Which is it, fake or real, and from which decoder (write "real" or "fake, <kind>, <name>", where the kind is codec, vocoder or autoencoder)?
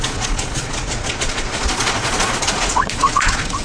fake, vocoder, Vocos